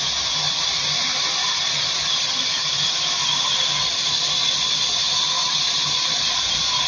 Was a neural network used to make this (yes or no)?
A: no